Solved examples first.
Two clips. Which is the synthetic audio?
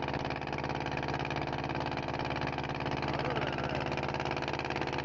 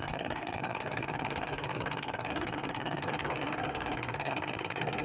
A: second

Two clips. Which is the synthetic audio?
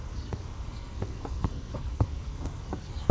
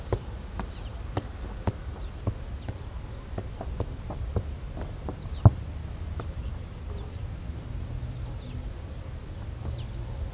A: first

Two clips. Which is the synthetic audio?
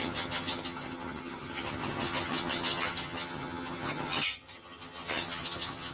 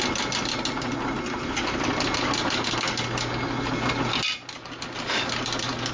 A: first